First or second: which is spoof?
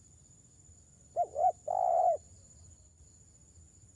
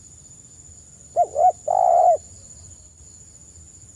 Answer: first